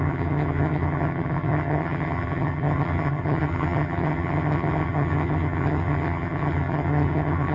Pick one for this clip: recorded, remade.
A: remade